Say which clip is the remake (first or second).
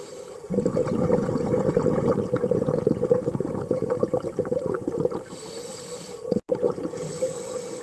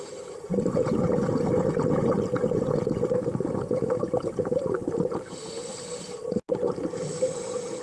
first